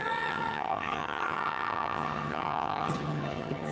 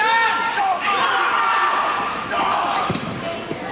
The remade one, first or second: first